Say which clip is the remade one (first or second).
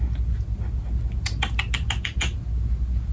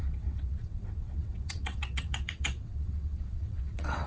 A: second